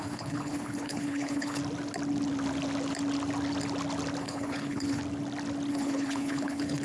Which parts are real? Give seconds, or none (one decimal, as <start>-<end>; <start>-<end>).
1.6-4.2; 5.0-5.7